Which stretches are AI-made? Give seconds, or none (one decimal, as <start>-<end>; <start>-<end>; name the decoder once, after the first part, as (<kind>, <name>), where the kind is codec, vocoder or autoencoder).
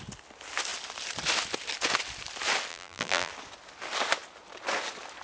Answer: 2.7-3.3 (vocoder, BigVGAN v2)